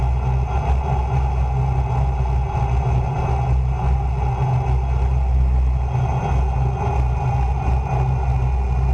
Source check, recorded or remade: recorded